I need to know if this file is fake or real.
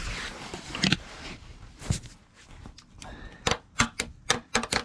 real